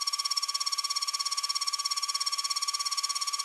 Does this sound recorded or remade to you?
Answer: remade